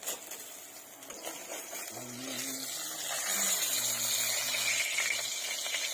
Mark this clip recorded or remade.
recorded